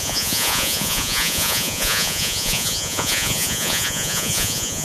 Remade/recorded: remade